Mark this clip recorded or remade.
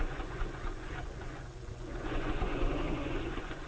remade